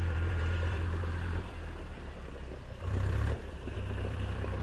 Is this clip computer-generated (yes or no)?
yes